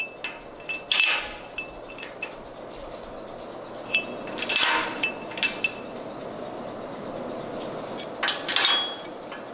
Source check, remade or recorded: recorded